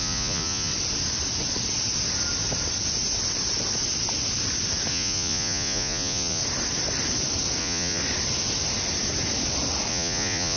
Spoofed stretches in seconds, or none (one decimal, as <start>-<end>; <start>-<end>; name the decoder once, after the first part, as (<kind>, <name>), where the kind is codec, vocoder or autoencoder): 0.0-0.7 (vocoder, Vocos); 4.9-6.4; 7.6-8.0; 9.9-10.6